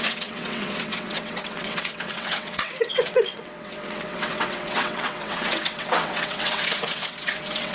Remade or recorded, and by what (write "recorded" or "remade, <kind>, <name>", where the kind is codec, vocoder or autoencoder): remade, vocoder, WaveNeXt